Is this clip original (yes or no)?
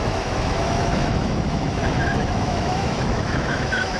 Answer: no